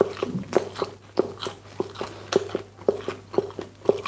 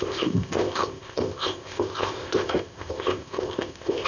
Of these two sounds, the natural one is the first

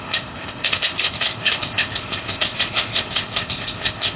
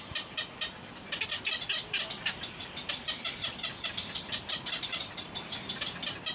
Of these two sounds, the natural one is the second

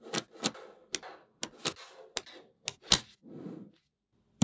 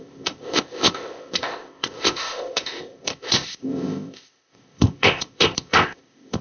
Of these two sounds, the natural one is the first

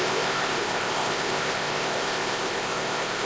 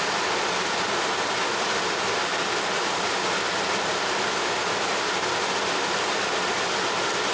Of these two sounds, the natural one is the second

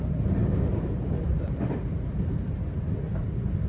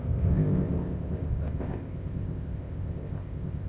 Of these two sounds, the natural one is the first